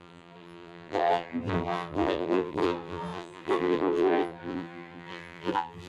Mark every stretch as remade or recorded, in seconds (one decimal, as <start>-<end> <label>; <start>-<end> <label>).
0.0-5.9 remade